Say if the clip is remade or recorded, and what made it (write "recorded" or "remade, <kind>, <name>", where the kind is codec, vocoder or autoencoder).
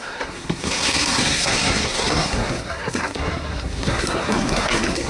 remade, codec, SNAC